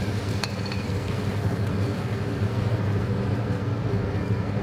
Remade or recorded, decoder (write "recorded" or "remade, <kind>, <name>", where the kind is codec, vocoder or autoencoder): remade, codec, SNAC